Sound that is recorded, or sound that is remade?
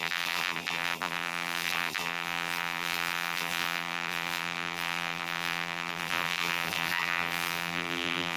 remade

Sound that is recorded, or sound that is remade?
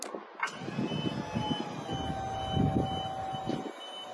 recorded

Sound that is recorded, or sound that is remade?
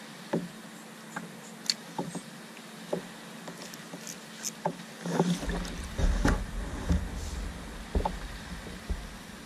recorded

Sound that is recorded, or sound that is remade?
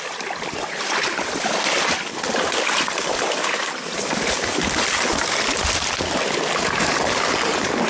recorded